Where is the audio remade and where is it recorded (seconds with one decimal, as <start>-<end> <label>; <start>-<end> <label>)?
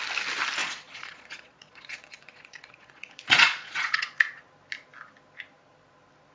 0.0-0.6 recorded; 0.6-4.4 remade; 4.4-6.3 recorded